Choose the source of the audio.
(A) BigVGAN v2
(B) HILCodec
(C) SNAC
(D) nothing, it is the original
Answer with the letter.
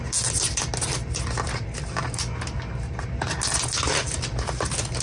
D